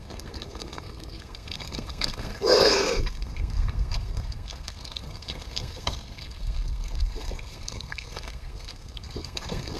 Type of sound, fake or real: fake